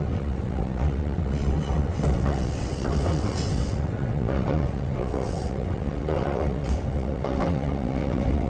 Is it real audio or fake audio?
fake